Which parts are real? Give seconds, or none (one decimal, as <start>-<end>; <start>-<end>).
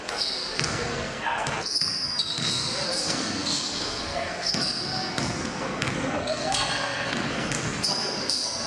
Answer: none